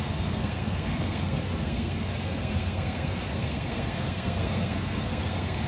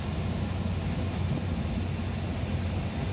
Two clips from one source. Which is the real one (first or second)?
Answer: second